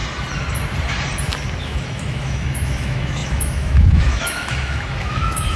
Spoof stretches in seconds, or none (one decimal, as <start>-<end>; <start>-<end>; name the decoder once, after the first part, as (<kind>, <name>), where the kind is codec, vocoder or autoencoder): 1.6-5.6 (autoencoder, DAC-VAE)